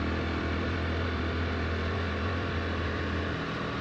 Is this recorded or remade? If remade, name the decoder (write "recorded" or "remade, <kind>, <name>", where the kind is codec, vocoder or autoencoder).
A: remade, vocoder, BigVGAN v2